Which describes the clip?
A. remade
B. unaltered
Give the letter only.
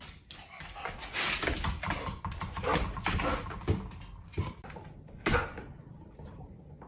B